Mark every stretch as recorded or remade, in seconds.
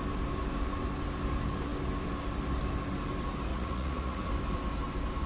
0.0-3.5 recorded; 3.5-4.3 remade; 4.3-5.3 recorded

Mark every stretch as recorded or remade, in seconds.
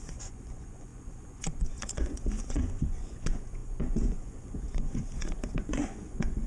0.0-6.5 remade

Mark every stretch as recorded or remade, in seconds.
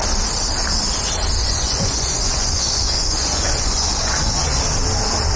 0.0-1.4 recorded; 1.4-4.6 remade; 4.6-5.4 recorded